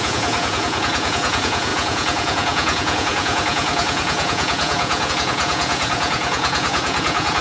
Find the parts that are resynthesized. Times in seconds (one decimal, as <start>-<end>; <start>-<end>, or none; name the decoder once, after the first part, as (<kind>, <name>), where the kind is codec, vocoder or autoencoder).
0.0-7.4 (vocoder, Vocos)